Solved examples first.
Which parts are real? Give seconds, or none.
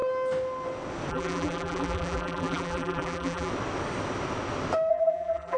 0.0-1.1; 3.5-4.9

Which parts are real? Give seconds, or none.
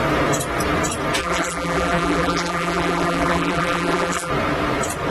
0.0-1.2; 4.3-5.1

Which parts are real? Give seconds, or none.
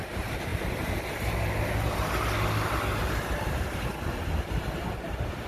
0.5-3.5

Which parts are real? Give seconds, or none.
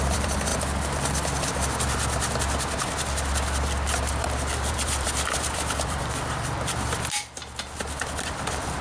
0.5-4.7; 7.4-8.8